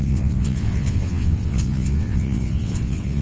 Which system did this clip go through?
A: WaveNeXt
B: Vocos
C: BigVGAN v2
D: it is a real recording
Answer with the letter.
A